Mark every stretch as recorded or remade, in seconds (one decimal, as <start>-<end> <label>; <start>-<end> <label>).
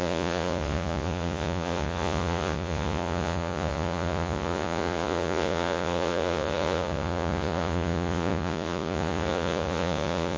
0.0-10.4 remade